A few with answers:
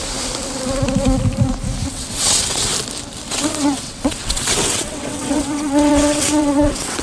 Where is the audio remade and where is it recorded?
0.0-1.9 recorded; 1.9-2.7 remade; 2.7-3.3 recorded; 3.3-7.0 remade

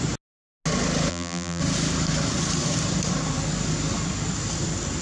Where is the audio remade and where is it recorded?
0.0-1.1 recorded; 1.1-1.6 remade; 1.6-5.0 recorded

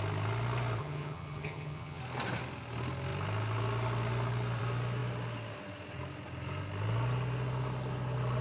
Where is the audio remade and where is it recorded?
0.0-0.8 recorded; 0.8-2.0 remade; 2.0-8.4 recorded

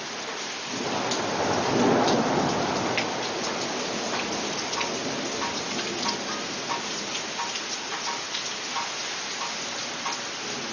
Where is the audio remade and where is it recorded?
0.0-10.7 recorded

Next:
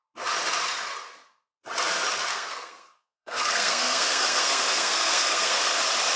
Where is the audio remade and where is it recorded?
0.0-2.3 recorded; 2.3-5.8 remade; 5.8-6.2 recorded

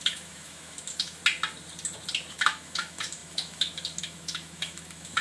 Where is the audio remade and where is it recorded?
0.0-1.2 remade; 1.2-2.3 recorded; 2.3-5.2 remade

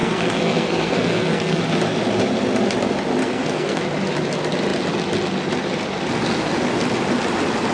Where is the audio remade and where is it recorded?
0.0-1.6 remade; 1.6-3.2 recorded; 3.2-3.8 remade; 3.8-7.7 recorded

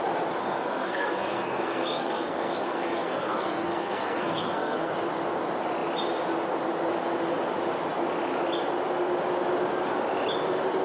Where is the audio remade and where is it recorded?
0.0-0.4 recorded; 0.4-4.9 remade; 4.9-10.8 recorded